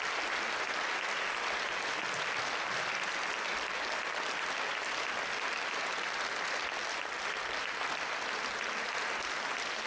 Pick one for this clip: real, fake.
real